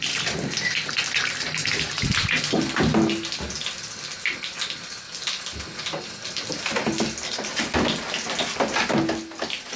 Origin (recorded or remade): recorded